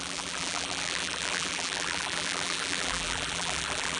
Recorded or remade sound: remade